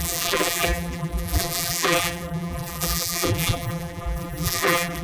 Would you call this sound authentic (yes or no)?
no